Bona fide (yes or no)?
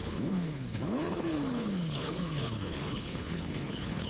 no